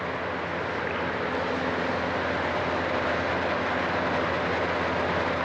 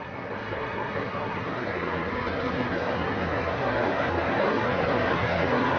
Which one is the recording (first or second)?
first